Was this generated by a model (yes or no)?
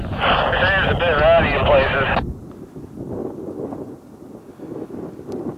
no